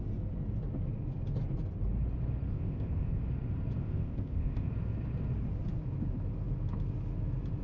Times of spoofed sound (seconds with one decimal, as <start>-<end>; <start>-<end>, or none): 2.5-3.2; 3.8-4.7